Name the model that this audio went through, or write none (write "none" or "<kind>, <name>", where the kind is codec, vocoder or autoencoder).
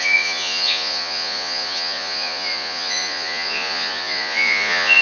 vocoder, Vocos